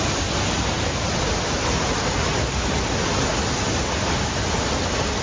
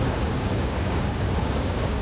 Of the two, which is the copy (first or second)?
second